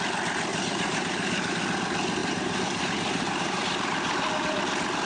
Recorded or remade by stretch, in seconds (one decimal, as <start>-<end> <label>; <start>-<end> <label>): 0.0-0.5 recorded; 0.5-1.5 remade; 1.5-2.2 recorded; 2.2-4.6 remade; 4.6-5.1 recorded